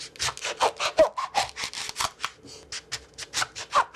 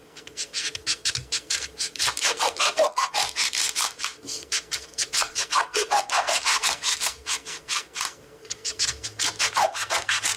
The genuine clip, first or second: first